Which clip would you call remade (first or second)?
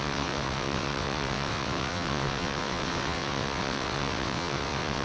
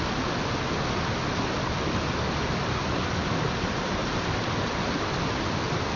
first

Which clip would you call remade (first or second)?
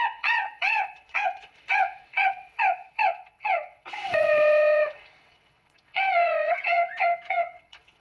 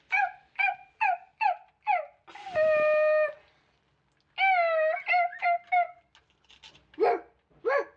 first